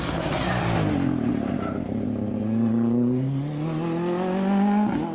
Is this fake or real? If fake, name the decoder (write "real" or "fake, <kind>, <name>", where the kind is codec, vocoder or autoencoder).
real